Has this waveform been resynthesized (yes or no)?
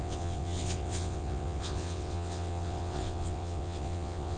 yes